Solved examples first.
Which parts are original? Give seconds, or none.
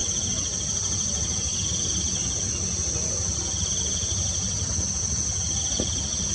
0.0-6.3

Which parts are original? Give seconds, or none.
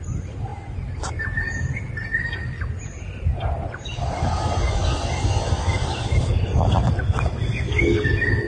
0.0-8.5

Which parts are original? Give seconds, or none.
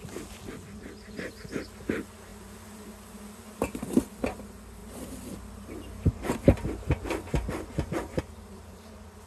0.0-9.3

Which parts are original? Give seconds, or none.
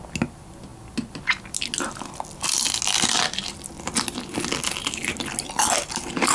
0.0-6.3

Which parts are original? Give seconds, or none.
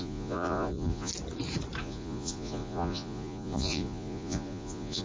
1.1-1.8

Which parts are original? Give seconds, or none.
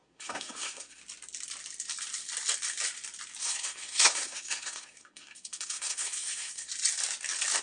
1.0-3.4; 6.7-7.6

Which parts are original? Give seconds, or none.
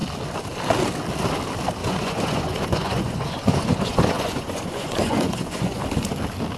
0.0-1.8; 5.8-6.6